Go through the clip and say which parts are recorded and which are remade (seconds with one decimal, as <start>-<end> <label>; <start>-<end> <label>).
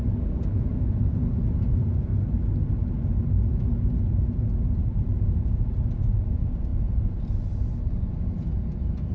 0.0-2.1 remade; 2.1-5.0 recorded; 5.0-6.7 remade; 6.7-8.1 recorded; 8.1-9.1 remade